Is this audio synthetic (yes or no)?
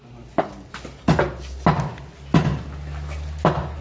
no